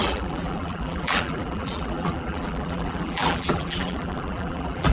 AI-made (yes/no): yes